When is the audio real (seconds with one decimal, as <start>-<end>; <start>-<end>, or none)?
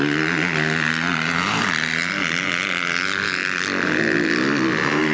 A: 0.0-1.1; 3.6-5.1